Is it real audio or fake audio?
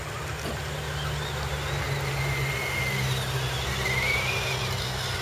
real